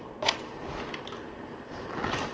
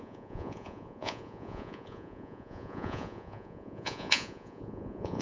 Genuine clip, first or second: first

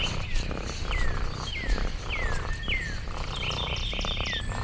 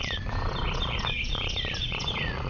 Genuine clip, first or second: first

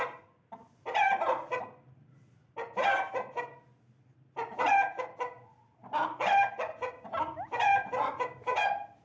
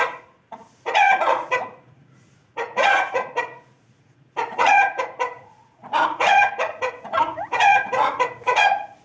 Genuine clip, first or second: first